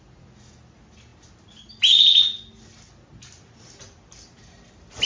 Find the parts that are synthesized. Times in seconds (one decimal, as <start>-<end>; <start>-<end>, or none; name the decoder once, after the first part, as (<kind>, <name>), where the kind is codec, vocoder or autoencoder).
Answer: none